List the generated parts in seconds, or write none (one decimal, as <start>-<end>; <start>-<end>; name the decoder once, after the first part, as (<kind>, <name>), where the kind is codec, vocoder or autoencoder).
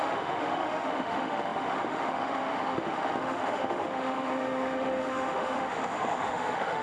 0.0-6.8 (autoencoder, DAC-VAE)